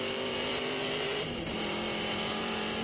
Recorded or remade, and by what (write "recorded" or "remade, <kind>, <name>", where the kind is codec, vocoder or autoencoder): remade, vocoder, BigVGAN v2